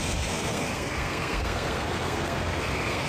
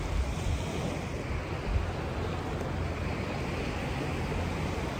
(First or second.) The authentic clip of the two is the second